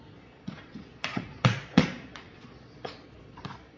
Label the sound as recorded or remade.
remade